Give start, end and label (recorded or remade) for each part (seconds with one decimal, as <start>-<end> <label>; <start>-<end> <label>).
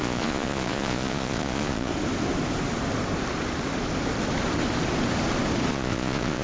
0.0-1.9 remade; 1.9-5.7 recorded; 5.7-6.4 remade